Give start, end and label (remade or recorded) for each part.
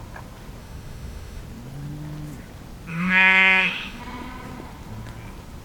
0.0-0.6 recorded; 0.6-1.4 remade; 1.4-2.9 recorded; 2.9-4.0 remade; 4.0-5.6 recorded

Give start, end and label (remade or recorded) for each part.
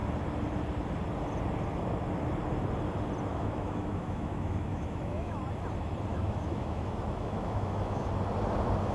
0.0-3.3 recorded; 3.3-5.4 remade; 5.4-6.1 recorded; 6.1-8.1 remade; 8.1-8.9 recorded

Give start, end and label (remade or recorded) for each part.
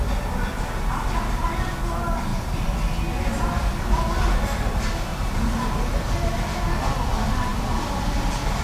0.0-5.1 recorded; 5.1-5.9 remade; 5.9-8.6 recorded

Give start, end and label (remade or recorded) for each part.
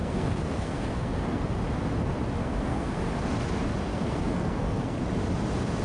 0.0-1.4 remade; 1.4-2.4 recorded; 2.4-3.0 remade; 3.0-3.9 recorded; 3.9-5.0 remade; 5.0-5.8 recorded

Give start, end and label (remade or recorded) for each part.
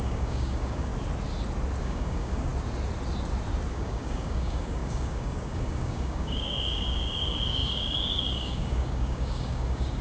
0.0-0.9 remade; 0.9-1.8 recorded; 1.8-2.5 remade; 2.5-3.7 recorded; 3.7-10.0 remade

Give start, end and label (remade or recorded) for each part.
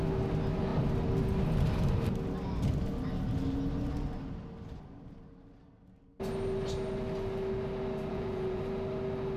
0.0-8.1 recorded; 8.1-8.6 remade; 8.6-9.4 recorded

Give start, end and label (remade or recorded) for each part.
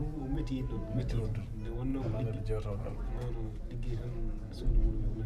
0.0-5.3 recorded